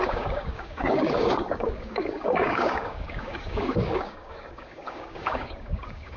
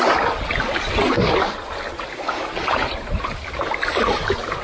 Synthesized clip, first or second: first